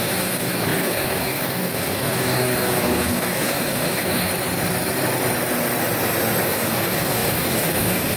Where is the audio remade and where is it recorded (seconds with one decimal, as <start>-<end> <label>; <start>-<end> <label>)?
0.0-4.3 remade; 4.3-6.4 recorded; 6.4-8.2 remade